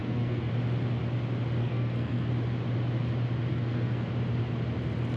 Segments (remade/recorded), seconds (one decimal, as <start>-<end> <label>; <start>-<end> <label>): 0.0-0.5 remade; 0.5-1.6 recorded; 1.6-2.3 remade; 2.3-3.5 recorded; 3.5-4.1 remade; 4.1-5.2 recorded